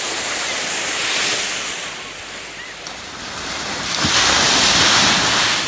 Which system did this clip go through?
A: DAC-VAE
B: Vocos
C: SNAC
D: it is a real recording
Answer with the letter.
D